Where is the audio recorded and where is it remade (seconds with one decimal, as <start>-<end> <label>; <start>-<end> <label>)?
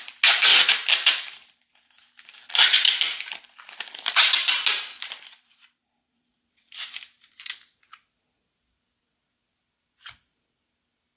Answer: 0.0-0.5 recorded; 0.5-3.0 remade; 3.0-4.7 recorded; 4.7-7.5 remade; 7.5-11.2 recorded